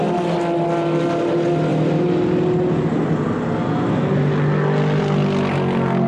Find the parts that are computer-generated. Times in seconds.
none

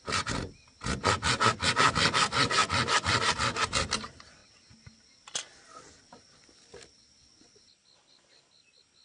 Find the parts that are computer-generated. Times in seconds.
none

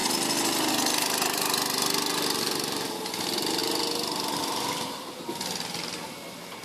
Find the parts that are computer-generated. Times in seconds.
none